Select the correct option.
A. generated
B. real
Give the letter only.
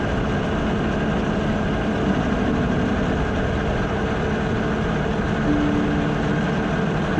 B